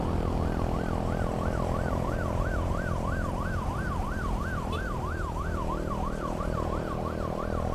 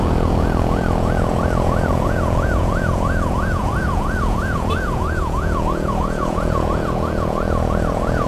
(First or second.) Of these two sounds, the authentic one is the first